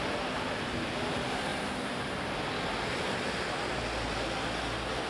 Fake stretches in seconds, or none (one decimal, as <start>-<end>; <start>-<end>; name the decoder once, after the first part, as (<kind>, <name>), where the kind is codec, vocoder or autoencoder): none